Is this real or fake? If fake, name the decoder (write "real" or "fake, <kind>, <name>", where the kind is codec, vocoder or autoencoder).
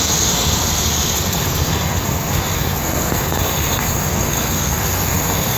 fake, codec, SNAC